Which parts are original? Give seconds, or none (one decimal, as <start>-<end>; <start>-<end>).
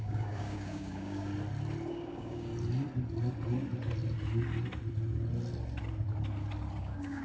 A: 1.3-1.9; 2.5-6.8